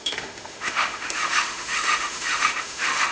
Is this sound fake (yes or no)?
yes